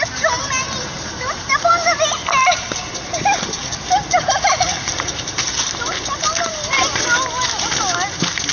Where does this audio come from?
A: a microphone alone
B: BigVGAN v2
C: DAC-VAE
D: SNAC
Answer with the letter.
B